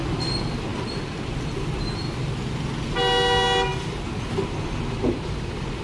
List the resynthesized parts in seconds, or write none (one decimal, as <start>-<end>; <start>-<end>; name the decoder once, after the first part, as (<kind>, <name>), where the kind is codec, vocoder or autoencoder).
none